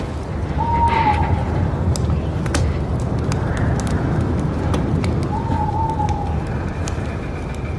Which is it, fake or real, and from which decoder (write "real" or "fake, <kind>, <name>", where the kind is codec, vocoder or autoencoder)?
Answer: real